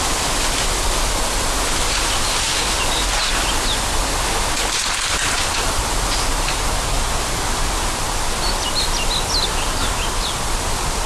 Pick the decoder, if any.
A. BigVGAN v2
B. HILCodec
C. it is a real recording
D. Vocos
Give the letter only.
C